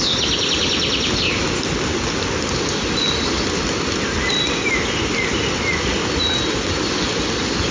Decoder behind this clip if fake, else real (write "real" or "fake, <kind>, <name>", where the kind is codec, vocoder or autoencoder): real